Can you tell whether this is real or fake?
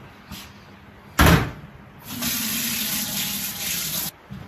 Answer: real